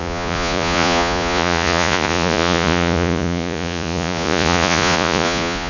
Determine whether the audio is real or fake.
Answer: fake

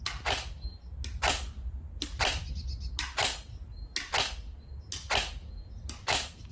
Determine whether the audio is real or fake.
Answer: real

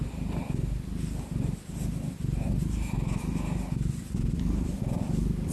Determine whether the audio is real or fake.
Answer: real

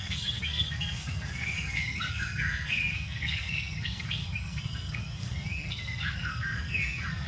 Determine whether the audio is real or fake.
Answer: fake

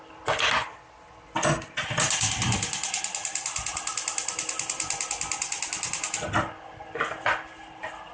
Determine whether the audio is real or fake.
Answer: real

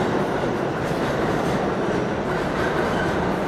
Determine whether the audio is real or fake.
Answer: real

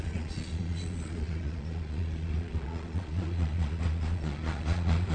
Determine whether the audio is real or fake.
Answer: fake